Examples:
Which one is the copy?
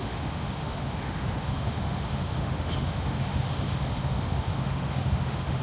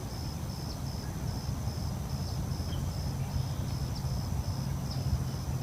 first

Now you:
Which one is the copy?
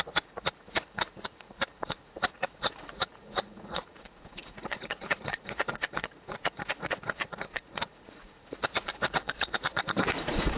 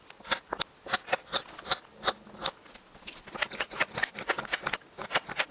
first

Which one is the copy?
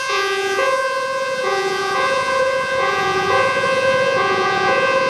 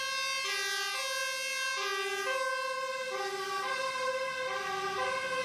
first